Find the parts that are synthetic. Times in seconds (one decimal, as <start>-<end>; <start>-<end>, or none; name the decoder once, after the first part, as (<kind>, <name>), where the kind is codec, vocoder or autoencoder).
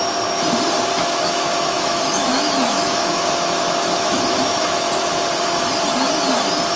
1.0-5.1 (autoencoder, DAC-VAE)